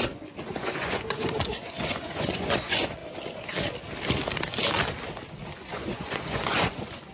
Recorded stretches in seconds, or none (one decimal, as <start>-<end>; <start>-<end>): 3.0-5.6